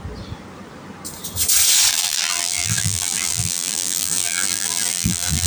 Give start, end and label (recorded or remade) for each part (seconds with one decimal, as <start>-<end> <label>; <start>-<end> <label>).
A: 0.0-1.9 recorded; 1.9-5.5 remade